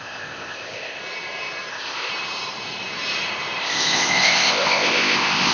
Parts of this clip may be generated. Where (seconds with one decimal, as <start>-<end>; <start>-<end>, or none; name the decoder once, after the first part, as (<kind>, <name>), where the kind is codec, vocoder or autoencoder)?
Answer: 0.0-1.0 (codec, ZipCodec); 1.7-2.1; 3.6-5.5